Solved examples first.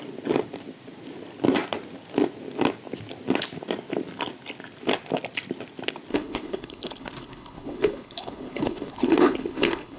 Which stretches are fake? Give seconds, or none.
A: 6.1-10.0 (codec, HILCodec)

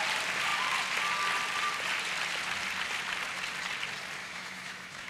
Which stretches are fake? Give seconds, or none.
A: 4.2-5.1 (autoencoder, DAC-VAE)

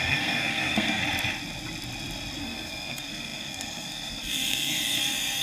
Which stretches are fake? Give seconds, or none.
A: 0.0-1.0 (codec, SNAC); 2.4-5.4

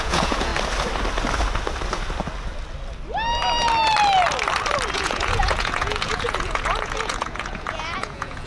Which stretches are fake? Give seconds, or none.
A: 0.0-0.5 (vocoder, Vocos); 4.9-8.5

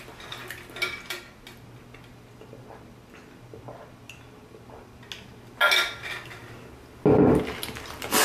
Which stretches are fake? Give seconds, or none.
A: none

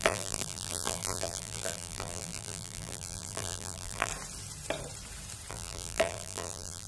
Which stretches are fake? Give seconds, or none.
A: 0.0-4.1 (vocoder, BigVGAN v2); 5.5-6.9